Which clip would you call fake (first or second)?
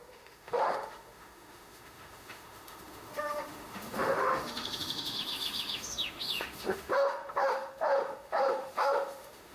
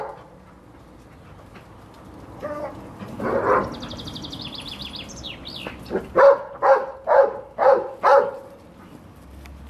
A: first